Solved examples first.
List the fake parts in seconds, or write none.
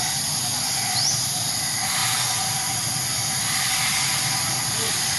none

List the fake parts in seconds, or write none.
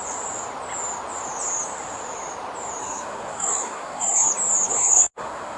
2.8-4.3; 4.7-5.6